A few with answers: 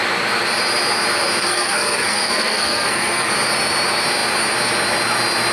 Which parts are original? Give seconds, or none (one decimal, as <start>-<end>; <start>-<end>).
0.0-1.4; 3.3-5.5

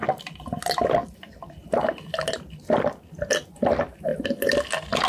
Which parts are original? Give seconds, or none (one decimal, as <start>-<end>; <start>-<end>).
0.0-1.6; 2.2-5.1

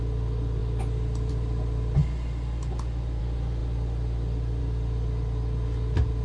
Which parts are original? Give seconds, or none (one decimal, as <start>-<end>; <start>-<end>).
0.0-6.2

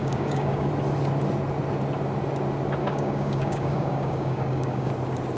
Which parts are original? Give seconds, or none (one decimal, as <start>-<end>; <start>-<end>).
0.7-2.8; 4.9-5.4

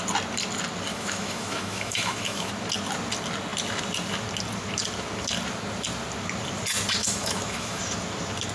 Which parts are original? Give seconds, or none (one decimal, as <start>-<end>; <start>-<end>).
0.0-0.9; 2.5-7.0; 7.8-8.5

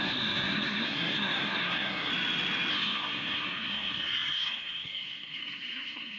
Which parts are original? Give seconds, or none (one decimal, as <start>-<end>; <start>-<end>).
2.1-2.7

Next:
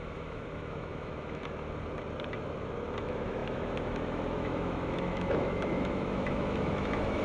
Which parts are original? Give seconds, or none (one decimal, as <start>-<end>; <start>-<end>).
1.4-3.0